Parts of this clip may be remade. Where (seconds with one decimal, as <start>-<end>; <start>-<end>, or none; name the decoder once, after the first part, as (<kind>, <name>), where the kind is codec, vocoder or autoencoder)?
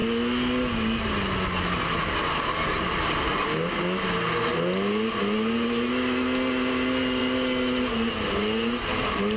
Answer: none